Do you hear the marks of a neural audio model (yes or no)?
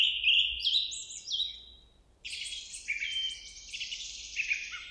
no